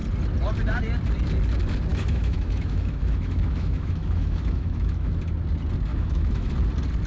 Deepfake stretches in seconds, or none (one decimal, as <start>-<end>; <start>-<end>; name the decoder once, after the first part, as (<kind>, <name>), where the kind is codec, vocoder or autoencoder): 1.9-5.1 (autoencoder, DAC-VAE); 5.9-6.5